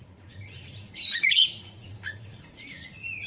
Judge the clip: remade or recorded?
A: remade